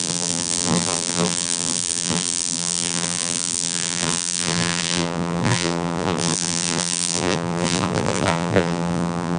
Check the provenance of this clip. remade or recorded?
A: remade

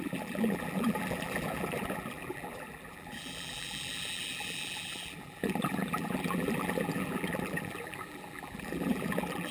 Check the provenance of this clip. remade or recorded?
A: remade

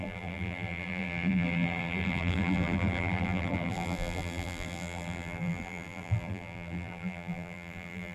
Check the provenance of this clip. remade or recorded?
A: remade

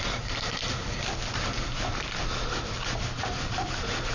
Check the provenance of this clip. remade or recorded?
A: remade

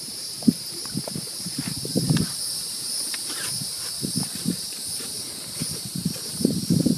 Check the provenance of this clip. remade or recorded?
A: remade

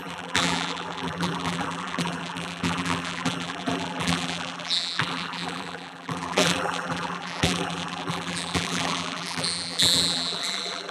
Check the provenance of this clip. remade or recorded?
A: remade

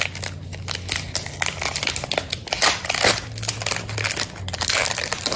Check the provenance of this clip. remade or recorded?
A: recorded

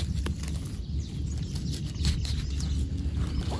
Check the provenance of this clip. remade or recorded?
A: recorded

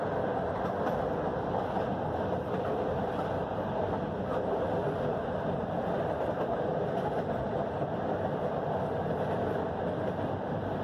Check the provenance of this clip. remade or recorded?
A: recorded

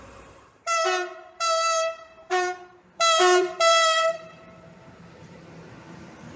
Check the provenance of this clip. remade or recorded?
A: remade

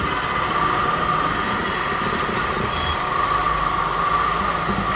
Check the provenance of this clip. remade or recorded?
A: recorded